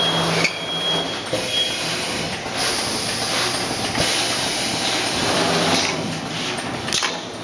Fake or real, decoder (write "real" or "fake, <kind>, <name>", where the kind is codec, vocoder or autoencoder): real